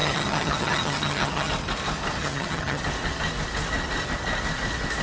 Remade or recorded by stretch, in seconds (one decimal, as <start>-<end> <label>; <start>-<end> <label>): 0.0-1.5 remade; 1.5-2.2 recorded; 2.2-2.8 remade; 2.8-5.0 recorded